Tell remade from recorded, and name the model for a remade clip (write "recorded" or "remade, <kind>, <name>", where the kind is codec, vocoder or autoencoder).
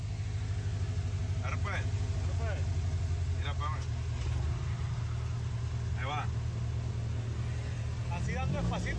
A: recorded